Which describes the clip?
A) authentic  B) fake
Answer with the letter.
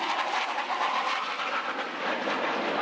A